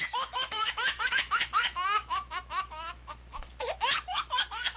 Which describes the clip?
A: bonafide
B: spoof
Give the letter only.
B